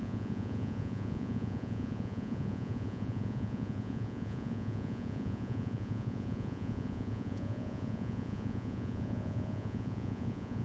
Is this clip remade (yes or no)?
yes